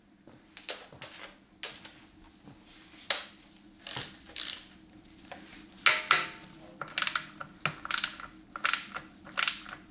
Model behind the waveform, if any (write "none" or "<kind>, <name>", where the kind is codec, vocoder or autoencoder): none